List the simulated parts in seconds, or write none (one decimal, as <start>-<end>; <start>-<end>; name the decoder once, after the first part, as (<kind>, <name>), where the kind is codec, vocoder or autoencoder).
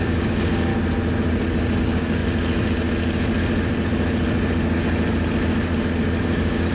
0.0-0.7 (codec, DAC); 1.8-2.2; 6.2-6.7